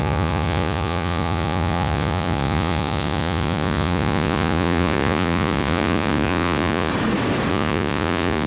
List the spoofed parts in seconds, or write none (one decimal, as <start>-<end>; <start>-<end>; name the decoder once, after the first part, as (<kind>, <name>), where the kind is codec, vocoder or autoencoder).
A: 0.0-6.9 (vocoder, Vocos); 7.5-8.5